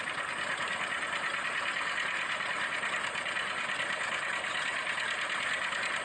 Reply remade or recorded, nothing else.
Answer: recorded